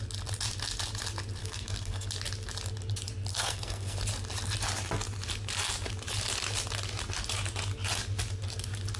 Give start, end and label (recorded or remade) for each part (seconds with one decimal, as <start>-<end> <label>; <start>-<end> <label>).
0.0-1.4 recorded; 1.4-2.1 remade; 2.1-3.3 recorded; 3.3-4.0 remade; 4.0-9.0 recorded